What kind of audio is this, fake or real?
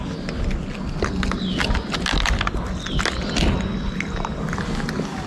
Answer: real